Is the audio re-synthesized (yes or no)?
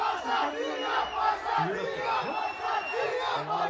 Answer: no